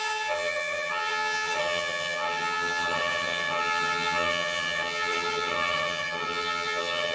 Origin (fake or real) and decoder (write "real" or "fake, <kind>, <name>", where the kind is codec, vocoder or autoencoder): fake, vocoder, HiFi-GAN